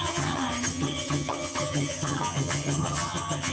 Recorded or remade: remade